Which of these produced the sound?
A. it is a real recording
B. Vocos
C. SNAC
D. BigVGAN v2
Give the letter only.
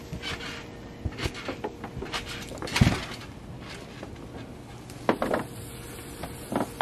A